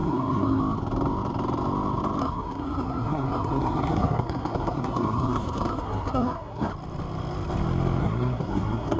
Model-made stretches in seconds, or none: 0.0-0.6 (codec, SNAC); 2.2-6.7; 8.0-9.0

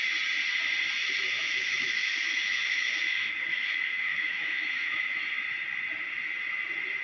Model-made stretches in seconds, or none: 1.0-5.2 (autoencoder, DAC-VAE)